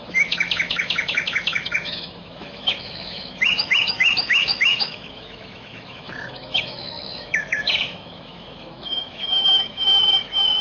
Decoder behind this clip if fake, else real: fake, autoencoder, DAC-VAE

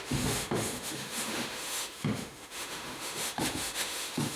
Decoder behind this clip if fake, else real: fake, autoencoder, DAC-VAE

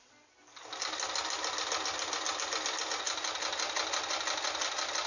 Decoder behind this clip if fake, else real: real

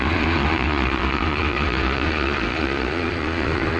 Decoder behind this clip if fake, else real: fake, vocoder, Vocos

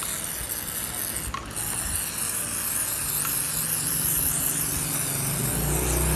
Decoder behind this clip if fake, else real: real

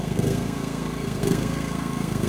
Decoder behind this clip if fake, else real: fake, codec, SNAC